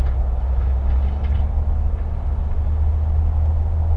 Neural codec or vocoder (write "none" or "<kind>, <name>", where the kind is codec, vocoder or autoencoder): none